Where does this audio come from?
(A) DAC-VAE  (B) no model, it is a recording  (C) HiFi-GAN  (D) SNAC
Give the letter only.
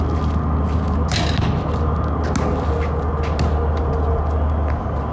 B